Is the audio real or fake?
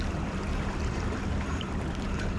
fake